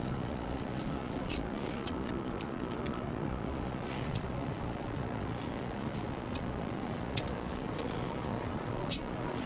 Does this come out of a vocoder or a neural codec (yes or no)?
yes